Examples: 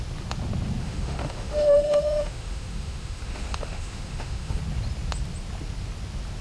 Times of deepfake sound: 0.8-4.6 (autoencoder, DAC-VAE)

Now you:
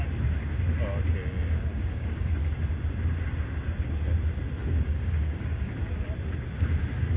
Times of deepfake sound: 1.7-2.5 (codec, DAC); 4.6-5.7

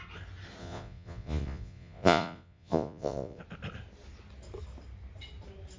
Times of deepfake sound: 0.6-3.4 (vocoder, Vocos)

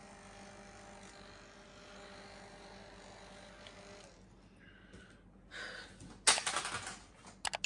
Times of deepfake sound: none

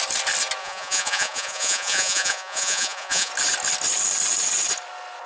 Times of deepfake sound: 0.6-3.3 (vocoder, Vocos)

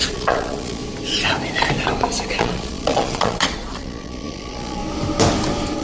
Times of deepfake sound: 0.0-0.8 (vocoder, Vocos); 2.4-4.8

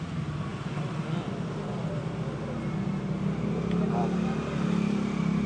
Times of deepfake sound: none